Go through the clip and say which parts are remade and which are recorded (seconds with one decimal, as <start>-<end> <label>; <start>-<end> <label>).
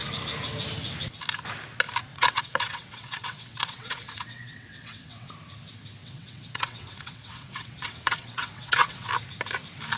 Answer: 0.0-2.1 recorded; 2.1-5.3 remade; 5.3-6.0 recorded; 6.0-9.1 remade; 9.1-10.0 recorded